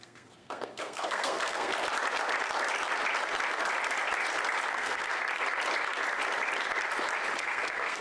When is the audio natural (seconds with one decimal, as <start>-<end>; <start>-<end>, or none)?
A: 1.7-4.7; 5.2-7.4

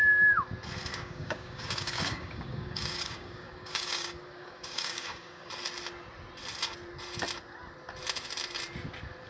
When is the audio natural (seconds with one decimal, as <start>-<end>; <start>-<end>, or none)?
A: 0.0-0.9; 5.5-9.3

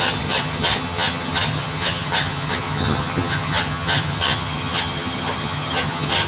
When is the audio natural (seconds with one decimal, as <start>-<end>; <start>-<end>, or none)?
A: none

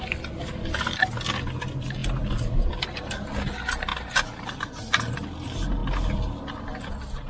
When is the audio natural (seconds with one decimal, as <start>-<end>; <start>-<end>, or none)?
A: 0.0-7.3

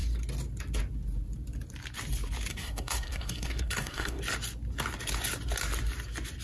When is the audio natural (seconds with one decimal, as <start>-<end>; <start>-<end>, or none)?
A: 0.0-2.5; 4.2-6.4